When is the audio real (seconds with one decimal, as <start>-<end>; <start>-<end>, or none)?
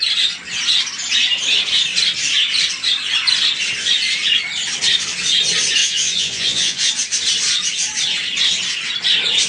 0.0-5.8; 6.9-9.5